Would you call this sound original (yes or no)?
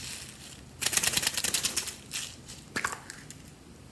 yes